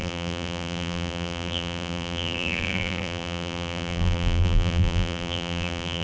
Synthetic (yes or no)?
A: yes